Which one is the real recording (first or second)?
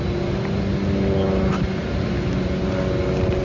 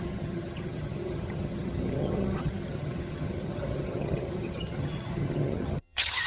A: first